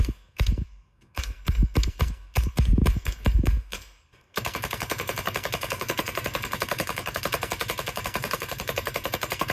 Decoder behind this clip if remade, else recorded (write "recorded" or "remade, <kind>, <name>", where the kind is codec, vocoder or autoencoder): remade, codec, SNAC